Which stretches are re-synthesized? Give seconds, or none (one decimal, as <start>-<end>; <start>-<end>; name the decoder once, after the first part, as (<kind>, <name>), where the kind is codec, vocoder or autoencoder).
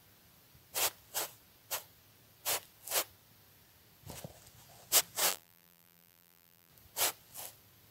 5.3-6.7 (vocoder, BigVGAN v2)